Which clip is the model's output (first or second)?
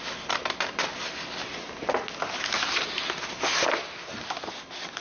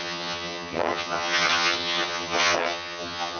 second